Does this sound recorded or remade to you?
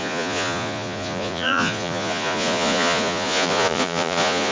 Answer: remade